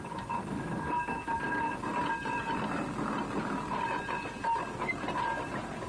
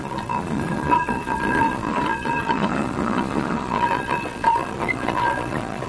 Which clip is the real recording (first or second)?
first